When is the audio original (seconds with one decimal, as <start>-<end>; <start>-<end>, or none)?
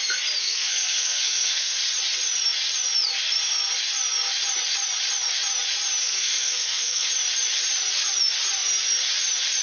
0.0-0.4; 1.8-6.0; 7.1-9.6